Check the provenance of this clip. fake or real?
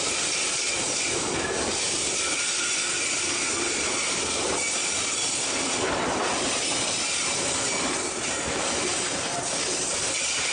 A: real